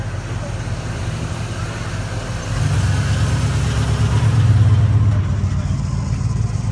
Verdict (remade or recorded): recorded